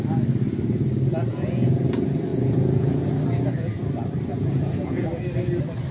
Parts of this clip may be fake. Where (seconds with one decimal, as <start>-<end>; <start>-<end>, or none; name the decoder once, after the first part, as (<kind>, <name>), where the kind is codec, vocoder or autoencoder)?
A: 1.3-1.8 (vocoder, Vocos); 2.3-3.1; 4.3-5.1